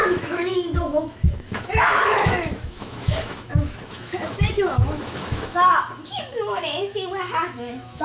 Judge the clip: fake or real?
fake